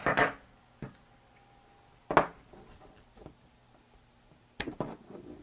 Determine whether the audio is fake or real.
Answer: real